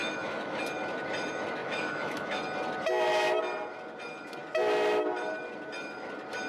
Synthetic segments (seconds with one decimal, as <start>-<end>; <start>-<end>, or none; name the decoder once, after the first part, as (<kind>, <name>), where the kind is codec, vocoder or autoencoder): 0.0-0.6 (autoencoder, DAC-VAE); 1.6-2.4

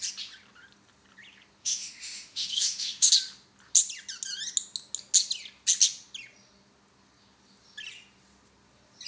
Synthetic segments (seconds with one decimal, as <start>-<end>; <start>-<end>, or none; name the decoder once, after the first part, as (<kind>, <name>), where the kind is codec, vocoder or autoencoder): 1.6-3.1 (autoencoder, DAC-VAE)